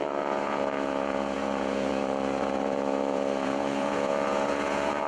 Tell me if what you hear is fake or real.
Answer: fake